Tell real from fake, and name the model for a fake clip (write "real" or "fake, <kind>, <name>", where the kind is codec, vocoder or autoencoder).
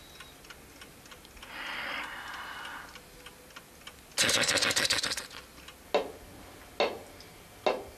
real